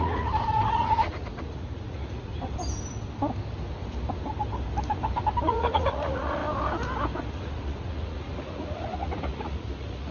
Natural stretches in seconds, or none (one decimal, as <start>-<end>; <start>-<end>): 2.3-5.4; 6.4-7.3